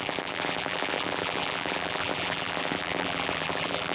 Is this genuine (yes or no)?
no